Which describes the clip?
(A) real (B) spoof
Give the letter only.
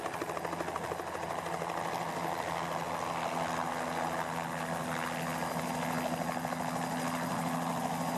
A